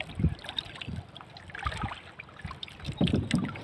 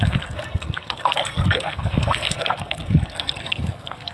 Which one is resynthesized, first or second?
second